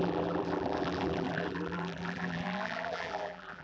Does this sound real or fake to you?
fake